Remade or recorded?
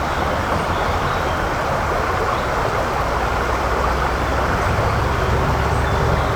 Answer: recorded